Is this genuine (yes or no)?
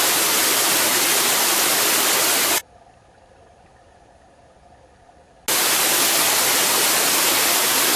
yes